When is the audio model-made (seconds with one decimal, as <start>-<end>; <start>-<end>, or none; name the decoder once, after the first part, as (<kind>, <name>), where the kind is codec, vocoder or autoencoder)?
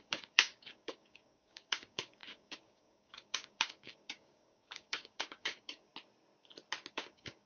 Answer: 0.0-5.9 (codec, DAC); 6.9-7.5